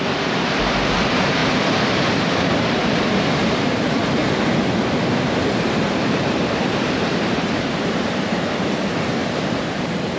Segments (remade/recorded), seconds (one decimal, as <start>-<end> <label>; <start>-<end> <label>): 0.0-4.0 remade; 4.0-5.1 recorded; 5.1-9.2 remade; 9.2-9.7 recorded; 9.7-10.2 remade